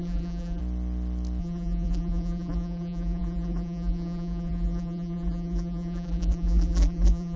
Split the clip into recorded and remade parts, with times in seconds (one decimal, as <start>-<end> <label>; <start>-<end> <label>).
0.0-0.6 remade; 0.6-1.4 recorded; 1.4-7.4 remade